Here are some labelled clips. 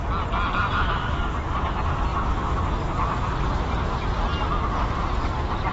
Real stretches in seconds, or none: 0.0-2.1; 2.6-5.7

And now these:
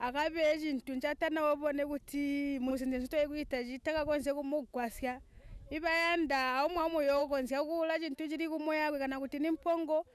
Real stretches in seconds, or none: 0.0-2.7; 6.8-7.2; 8.6-10.1

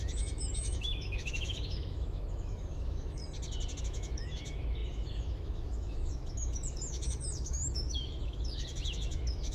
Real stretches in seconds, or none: 3.2-3.8